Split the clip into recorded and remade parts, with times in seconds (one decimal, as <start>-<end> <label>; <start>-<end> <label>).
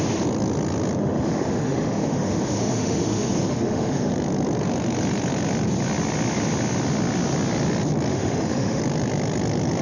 0.0-1.0 recorded; 1.0-4.1 remade; 4.1-8.1 recorded; 8.1-8.8 remade; 8.8-9.8 recorded